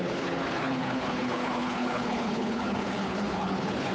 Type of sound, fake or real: fake